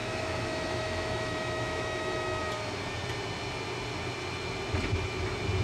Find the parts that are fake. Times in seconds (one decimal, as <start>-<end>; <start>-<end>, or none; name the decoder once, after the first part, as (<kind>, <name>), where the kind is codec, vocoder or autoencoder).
0.0-2.4 (autoencoder, DAC-VAE)